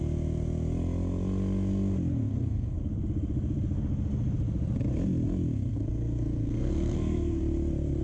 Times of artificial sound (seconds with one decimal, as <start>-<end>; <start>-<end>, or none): 2.1-2.8; 5.7-7.4